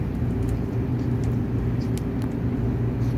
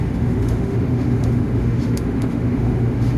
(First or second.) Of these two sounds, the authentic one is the first